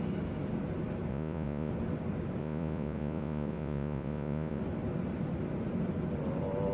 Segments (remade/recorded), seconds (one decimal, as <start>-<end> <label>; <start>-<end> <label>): 0.0-1.1 recorded; 1.1-1.7 remade; 1.7-2.4 recorded; 2.4-4.6 remade; 4.6-6.7 recorded